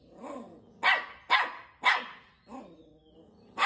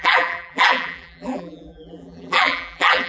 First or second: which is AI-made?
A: second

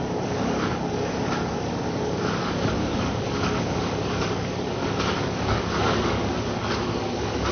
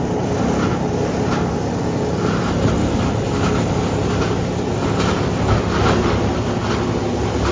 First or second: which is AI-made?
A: first